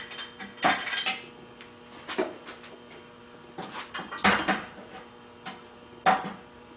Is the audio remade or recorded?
recorded